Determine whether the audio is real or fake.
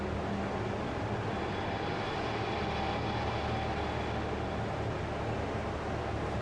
real